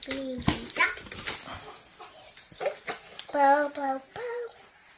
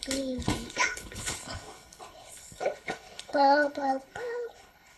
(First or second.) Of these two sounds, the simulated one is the second